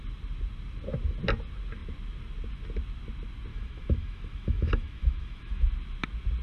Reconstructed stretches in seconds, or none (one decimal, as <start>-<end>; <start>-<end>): 3.5-5.7